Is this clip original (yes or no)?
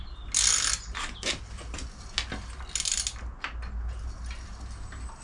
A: yes